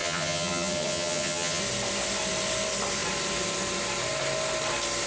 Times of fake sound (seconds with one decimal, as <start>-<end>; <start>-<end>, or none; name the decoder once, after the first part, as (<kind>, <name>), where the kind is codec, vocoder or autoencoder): 0.0-1.6 (vocoder, HiFi-GAN)

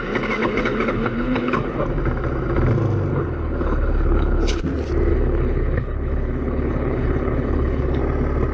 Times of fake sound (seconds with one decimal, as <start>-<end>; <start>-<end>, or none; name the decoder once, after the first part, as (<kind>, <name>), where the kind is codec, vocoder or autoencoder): 0.4-1.8 (codec, HILCodec); 3.1-4.6; 5.1-8.0

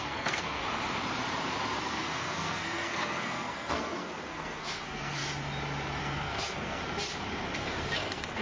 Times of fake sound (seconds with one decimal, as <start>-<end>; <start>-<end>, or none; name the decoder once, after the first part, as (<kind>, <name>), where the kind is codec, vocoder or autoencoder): 0.0-0.6 (codec, SNAC); 1.8-5.2; 6.0-6.8; 7.5-8.4